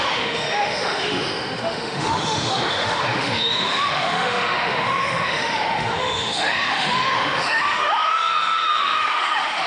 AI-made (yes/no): yes